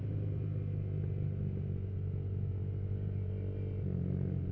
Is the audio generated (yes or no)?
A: no